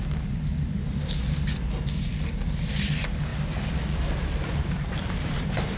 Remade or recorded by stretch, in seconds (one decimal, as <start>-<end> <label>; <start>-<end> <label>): 0.0-5.8 recorded